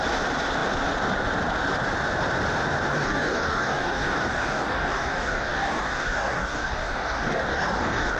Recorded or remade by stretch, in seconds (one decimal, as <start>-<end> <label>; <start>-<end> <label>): 0.0-2.9 recorded; 2.9-8.2 remade